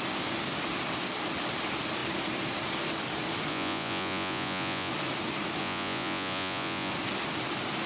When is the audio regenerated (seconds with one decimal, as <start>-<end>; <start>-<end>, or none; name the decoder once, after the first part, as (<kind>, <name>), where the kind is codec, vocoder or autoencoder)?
3.5-4.9 (vocoder, Vocos); 5.6-6.9